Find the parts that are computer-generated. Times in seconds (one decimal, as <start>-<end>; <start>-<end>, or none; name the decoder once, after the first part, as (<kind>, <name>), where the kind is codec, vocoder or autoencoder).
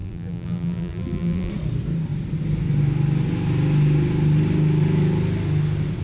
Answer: 0.0-1.5 (vocoder, BigVGAN v2)